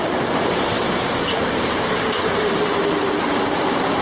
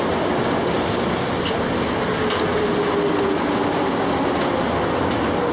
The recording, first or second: second